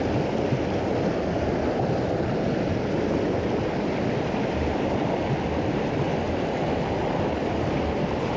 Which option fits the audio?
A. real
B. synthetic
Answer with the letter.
A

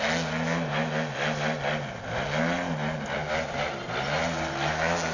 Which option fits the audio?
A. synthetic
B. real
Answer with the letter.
B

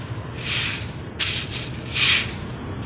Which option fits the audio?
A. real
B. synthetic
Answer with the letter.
A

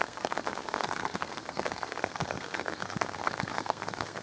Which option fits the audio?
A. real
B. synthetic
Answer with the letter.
B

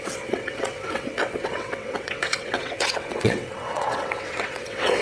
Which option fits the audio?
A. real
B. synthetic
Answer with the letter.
B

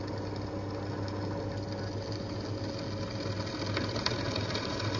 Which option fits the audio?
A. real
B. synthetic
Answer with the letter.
A